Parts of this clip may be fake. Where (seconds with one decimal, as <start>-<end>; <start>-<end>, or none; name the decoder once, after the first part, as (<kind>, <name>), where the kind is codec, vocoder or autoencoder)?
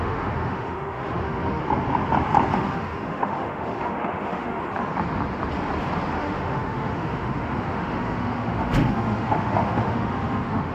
0.0-1.6 (autoencoder, DAC-VAE); 2.5-4.6; 6.1-10.7